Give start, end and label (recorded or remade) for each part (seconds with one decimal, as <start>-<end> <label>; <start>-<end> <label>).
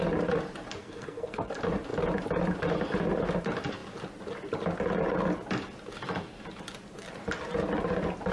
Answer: 0.0-0.8 recorded; 0.8-1.5 remade; 1.5-8.3 recorded